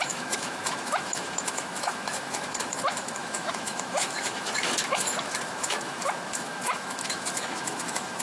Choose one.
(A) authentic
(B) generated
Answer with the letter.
B